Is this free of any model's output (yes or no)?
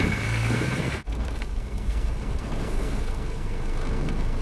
no